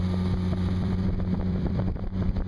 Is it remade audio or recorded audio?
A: remade